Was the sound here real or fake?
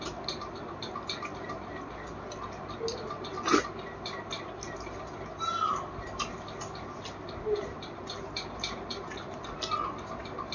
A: real